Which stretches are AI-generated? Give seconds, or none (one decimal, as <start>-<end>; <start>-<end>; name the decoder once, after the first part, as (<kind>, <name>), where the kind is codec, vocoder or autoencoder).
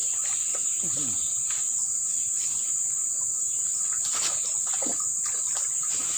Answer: none